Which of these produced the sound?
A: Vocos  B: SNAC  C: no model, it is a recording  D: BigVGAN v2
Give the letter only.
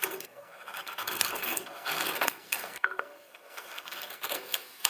B